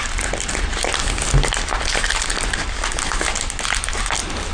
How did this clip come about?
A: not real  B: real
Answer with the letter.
B